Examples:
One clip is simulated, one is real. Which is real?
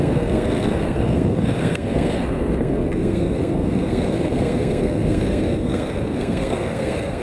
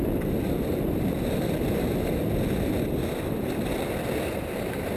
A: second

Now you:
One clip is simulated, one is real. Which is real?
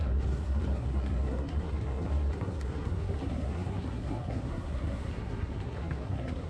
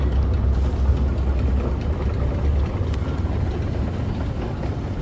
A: second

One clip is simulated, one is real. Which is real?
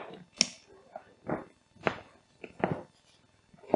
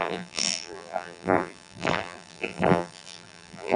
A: first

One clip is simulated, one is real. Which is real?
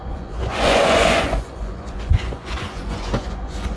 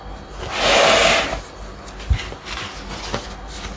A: second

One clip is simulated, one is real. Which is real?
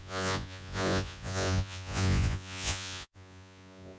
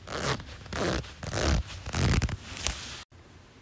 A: second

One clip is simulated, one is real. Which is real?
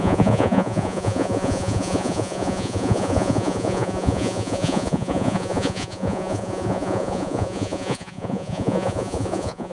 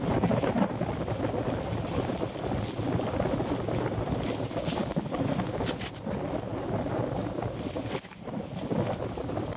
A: second